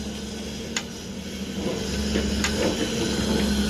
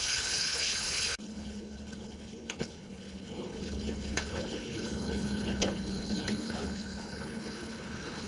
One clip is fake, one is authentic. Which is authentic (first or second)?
first